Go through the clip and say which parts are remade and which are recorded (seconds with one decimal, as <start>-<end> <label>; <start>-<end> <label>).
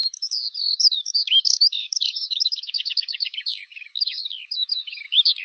0.0-5.4 remade